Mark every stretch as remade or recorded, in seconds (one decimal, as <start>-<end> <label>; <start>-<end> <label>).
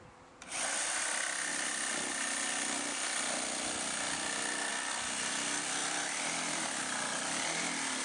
0.0-1.5 recorded; 1.5-4.7 remade; 4.7-5.8 recorded; 5.8-7.2 remade; 7.2-8.0 recorded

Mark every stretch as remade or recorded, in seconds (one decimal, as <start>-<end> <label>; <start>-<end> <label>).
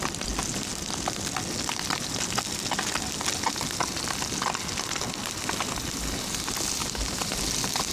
0.0-6.8 recorded; 6.8-7.4 remade; 7.4-7.9 recorded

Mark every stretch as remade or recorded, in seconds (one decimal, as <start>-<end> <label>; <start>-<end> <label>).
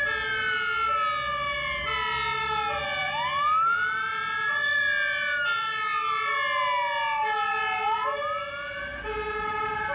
0.0-9.9 recorded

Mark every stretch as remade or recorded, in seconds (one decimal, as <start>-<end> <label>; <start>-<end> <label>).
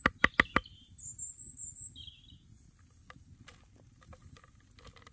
0.0-5.1 recorded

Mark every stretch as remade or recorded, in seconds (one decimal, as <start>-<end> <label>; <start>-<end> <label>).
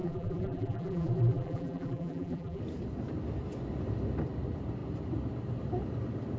0.0-2.6 remade; 2.6-6.4 recorded